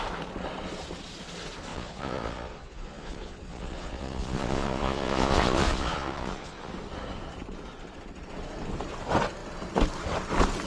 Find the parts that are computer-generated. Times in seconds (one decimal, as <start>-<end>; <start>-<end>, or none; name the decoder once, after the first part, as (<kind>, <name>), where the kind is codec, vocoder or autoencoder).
1.7-6.7 (vocoder, Vocos)